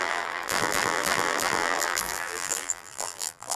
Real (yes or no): no